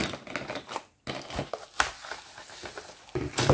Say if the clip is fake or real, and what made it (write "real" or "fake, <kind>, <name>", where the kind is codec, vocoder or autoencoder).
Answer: real